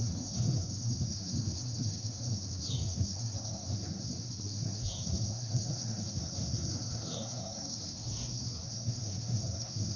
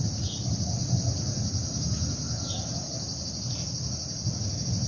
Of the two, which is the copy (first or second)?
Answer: first